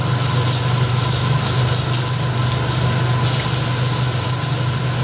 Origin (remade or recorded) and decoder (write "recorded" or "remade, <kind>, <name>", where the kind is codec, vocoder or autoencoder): recorded